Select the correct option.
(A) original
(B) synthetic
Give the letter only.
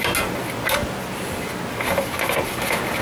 A